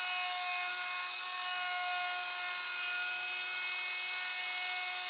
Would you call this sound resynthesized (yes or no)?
no